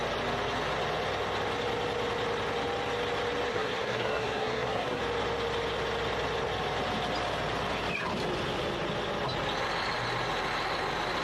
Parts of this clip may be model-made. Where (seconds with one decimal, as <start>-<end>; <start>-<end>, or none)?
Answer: 3.5-5.0